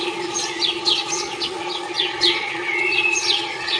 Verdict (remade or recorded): remade